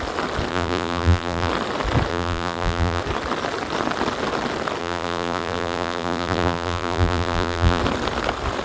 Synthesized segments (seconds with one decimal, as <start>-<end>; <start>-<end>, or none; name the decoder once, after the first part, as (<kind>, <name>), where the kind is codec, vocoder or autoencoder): 0.5-1.5 (vocoder, BigVGAN v2); 2.1-3.0; 4.8-7.8